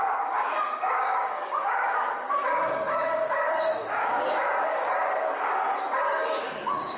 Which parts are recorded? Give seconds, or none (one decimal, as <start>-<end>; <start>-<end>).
none